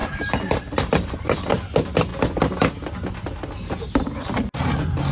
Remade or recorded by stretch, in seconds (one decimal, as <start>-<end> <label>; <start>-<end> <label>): 0.0-1.5 remade; 1.5-5.1 recorded